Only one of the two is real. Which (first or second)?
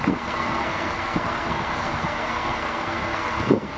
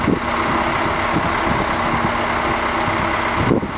second